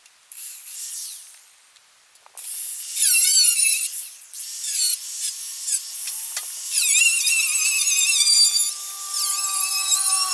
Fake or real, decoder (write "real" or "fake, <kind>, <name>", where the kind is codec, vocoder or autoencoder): real